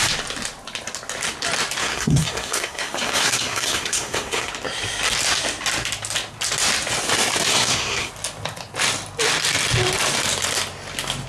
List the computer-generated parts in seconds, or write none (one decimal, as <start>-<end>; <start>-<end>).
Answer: 1.8-4.5; 7.5-8.1